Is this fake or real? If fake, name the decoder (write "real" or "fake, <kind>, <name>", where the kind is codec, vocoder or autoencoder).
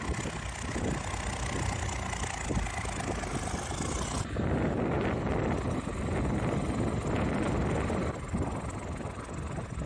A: real